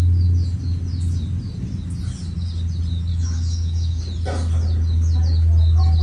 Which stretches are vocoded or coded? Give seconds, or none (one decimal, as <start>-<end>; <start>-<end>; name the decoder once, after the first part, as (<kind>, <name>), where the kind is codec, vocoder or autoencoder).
3.1-4.0 (autoencoder, DAC-VAE)